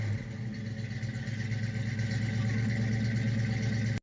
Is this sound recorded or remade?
recorded